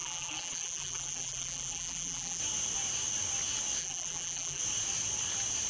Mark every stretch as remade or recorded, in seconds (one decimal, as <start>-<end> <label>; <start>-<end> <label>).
0.0-2.4 remade; 2.4-3.8 recorded; 3.8-4.6 remade; 4.6-5.7 recorded

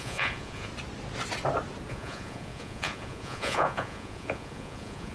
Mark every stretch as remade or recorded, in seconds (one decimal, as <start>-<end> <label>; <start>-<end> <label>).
0.0-0.7 remade; 0.7-1.9 recorded; 1.9-5.1 remade

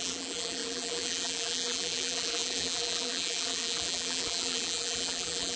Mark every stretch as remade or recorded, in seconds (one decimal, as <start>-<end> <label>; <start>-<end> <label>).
0.0-5.6 remade

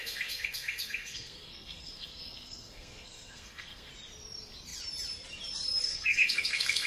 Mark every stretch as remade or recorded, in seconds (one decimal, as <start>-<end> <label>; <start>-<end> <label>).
0.0-3.9 remade; 3.9-5.9 recorded; 5.9-6.9 remade

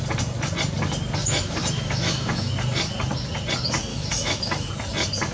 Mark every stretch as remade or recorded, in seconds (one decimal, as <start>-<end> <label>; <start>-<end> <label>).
0.0-1.2 recorded; 1.2-2.5 remade; 2.5-3.9 recorded; 3.9-4.7 remade; 4.7-5.3 recorded

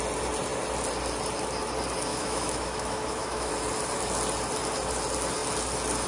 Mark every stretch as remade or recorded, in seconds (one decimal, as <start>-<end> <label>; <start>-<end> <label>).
0.0-2.1 recorded; 2.1-3.5 remade; 3.5-6.1 recorded